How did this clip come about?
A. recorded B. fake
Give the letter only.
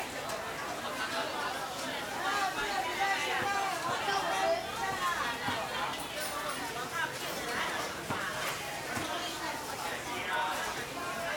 A